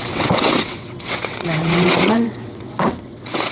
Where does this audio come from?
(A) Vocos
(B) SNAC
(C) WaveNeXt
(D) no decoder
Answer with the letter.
C